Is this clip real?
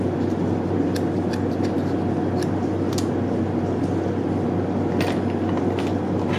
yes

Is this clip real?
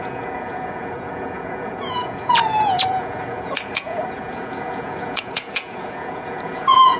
no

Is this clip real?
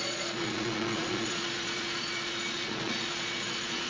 no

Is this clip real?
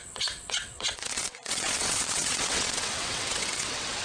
no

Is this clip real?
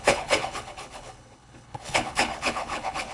no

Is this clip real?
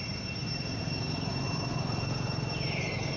yes